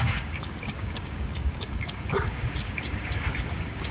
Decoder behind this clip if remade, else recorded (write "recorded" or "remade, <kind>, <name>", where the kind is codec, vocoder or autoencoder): remade, codec, DAC